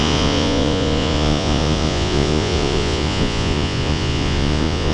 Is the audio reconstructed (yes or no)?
yes